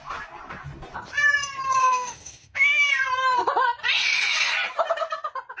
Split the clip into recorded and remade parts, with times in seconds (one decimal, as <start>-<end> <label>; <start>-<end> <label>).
0.0-1.8 recorded; 1.8-2.9 remade; 2.9-5.6 recorded